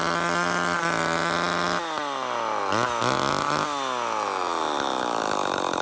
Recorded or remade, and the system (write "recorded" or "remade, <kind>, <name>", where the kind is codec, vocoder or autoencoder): recorded